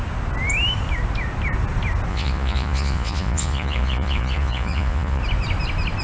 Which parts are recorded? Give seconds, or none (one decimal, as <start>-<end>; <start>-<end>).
0.0-2.1; 5.2-6.0